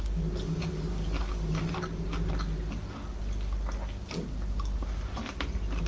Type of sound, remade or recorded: recorded